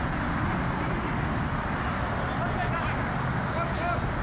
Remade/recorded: recorded